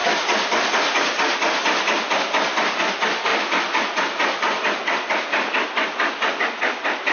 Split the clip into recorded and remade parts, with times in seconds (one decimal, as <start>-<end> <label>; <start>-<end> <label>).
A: 0.0-7.1 recorded